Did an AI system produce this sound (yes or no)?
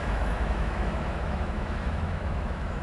yes